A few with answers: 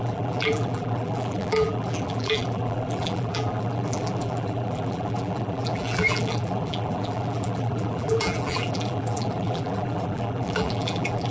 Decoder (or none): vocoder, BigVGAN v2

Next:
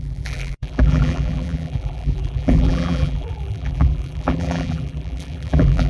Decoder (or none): vocoder, BigVGAN v2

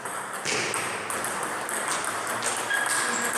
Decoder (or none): none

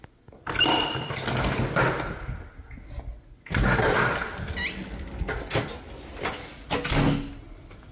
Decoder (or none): none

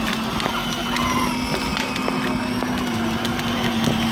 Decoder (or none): none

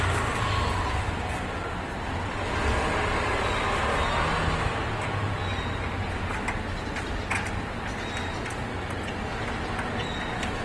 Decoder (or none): none